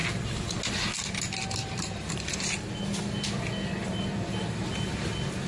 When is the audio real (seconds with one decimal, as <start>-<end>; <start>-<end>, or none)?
0.0-1.4; 2.4-3.8; 4.7-5.5